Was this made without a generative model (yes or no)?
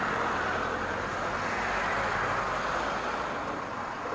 yes